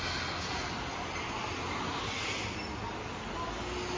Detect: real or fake real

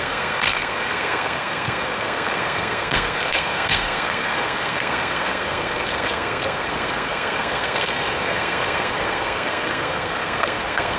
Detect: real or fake fake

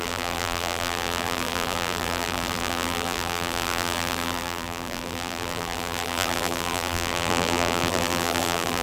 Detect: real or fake fake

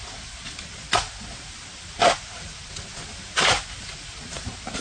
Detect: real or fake real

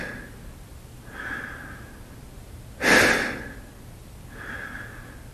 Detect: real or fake real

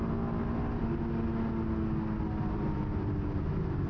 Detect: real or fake real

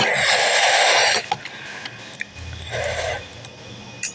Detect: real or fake real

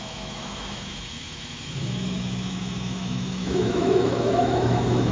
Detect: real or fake fake